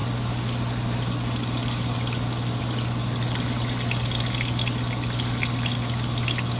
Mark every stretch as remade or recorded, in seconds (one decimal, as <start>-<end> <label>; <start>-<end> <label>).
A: 0.0-6.6 recorded